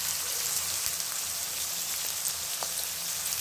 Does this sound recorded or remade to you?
recorded